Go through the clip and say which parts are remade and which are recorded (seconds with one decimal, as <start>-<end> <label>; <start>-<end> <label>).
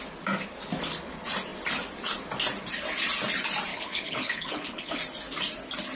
0.0-3.7 recorded; 3.7-5.0 remade; 5.0-6.0 recorded